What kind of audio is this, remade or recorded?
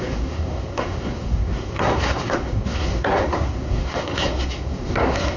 remade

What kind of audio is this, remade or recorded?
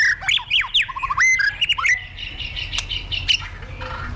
recorded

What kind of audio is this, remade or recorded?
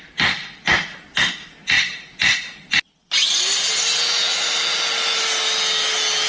recorded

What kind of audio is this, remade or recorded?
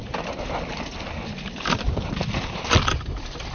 remade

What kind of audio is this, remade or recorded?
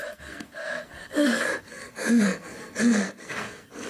remade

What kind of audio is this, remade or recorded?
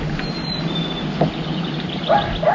recorded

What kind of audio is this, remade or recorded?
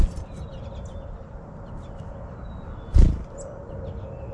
recorded